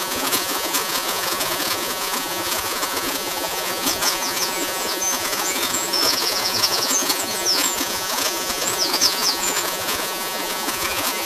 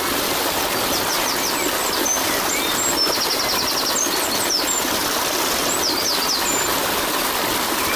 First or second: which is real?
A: second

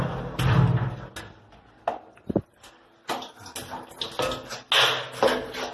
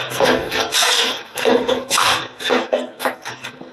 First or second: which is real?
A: first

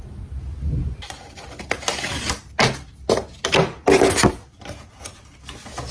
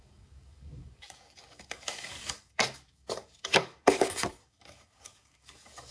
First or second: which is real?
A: first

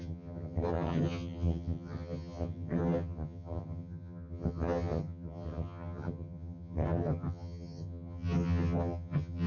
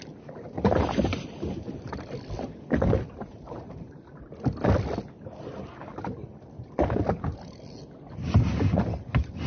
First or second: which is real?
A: second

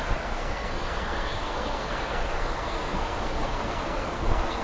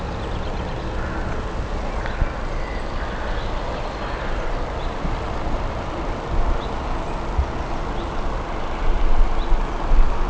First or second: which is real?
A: second